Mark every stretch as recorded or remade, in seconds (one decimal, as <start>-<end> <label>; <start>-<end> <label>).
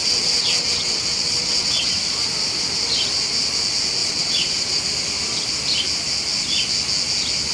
0.0-2.0 remade; 2.0-4.0 recorded; 4.0-4.8 remade; 4.8-7.5 recorded